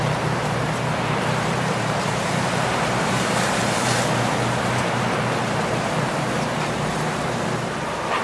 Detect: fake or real fake